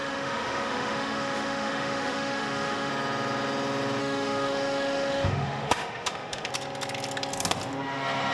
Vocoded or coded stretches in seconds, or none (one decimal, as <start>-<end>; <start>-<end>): 0.0-2.9; 4.0-6.5